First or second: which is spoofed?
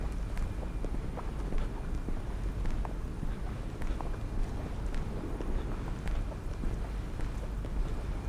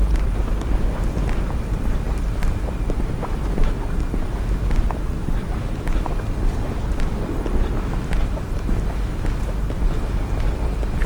second